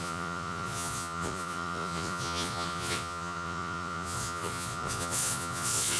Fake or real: fake